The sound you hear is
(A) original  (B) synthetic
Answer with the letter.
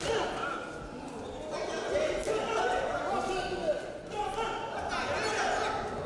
A